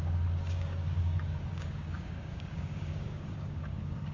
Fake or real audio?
fake